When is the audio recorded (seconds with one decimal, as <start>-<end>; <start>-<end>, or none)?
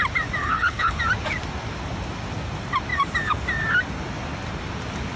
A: 0.0-0.4; 1.0-5.2